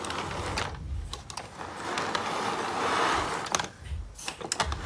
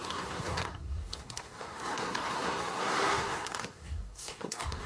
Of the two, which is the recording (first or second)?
first